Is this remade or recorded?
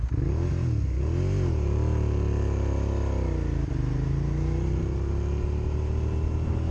recorded